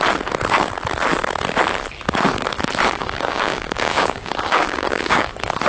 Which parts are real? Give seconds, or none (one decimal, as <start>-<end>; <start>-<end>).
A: 0.0-2.8; 5.3-5.7